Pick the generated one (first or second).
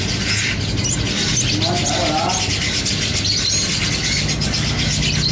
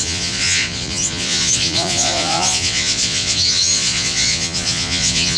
second